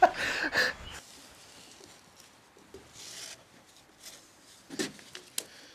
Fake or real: real